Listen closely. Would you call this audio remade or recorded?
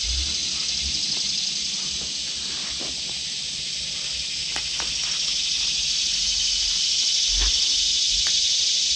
recorded